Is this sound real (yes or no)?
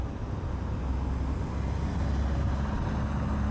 yes